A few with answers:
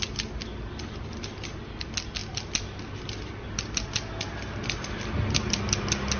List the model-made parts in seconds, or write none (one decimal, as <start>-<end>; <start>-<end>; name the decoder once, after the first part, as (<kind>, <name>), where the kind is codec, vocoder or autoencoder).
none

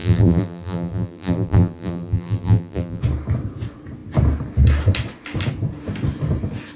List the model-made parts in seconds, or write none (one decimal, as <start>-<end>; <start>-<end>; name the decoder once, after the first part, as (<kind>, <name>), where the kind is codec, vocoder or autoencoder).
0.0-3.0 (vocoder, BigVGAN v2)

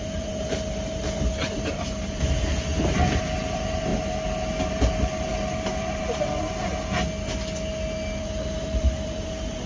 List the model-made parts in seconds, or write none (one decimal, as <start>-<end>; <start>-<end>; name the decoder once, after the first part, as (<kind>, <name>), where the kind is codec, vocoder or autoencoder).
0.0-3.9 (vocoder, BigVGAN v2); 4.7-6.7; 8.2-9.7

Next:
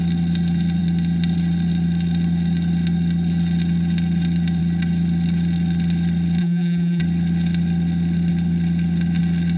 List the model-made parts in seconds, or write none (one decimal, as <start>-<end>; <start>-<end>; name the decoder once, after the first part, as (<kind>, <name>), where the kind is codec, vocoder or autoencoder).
6.4-7.0 (vocoder, BigVGAN v2)

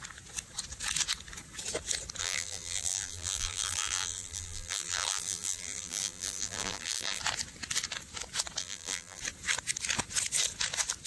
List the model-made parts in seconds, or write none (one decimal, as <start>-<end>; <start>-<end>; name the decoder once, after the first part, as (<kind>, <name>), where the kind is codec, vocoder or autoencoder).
2.2-7.2 (vocoder, BigVGAN v2); 8.6-9.2

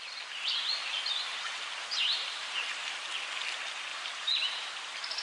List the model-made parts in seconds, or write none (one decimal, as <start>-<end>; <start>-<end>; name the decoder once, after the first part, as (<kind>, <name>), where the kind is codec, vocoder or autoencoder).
0.8-3.2 (vocoder, BigVGAN v2); 3.9-4.7